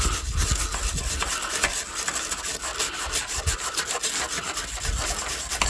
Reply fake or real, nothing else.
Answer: real